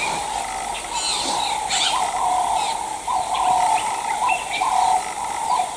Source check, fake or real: real